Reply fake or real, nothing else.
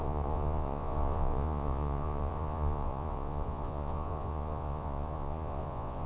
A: fake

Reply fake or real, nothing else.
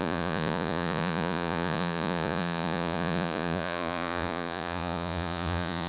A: fake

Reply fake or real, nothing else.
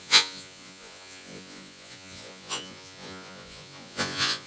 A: fake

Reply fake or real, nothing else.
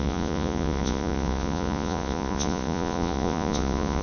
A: fake